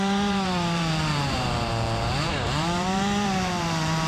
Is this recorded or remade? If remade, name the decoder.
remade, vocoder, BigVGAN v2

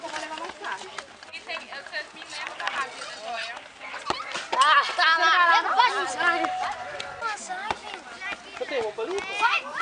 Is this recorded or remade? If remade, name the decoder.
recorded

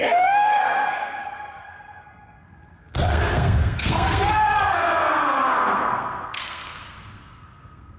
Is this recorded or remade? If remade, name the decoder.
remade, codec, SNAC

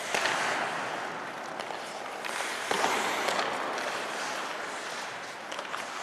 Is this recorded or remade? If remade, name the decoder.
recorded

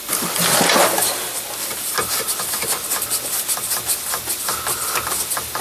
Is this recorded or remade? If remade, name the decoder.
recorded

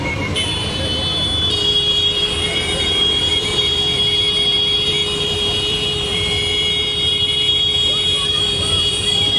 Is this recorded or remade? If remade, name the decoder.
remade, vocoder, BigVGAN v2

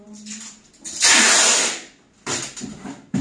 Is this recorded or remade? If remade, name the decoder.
recorded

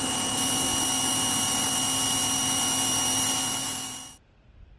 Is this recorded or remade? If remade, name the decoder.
recorded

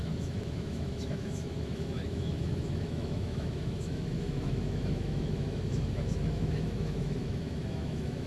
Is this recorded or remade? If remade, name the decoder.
remade, autoencoder, DAC-VAE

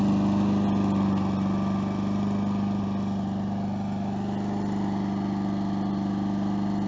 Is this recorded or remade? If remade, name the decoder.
recorded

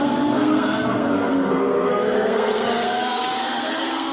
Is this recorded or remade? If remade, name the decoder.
remade, codec, SNAC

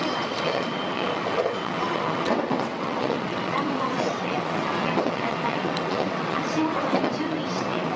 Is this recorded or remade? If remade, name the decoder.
remade, vocoder, WaveNeXt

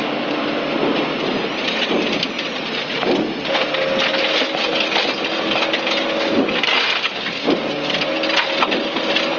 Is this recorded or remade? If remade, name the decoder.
recorded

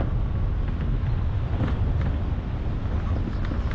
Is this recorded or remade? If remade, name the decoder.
recorded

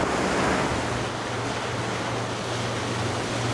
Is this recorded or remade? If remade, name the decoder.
recorded